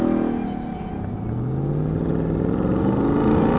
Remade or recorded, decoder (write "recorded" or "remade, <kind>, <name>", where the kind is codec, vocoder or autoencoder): recorded